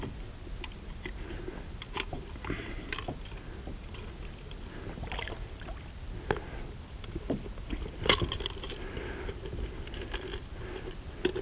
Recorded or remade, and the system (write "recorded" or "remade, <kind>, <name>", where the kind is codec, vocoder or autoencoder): recorded